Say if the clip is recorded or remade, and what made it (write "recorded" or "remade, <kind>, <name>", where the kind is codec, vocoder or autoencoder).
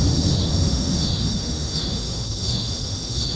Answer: remade, autoencoder, DAC-VAE